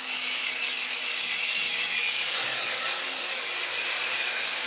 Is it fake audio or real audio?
fake